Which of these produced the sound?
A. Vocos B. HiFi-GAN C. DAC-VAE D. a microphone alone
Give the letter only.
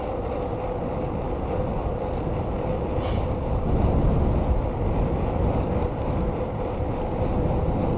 D